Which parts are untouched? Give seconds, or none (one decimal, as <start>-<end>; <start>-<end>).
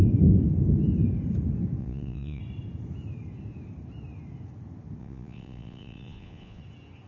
0.0-1.8; 2.4-5.0; 6.6-7.1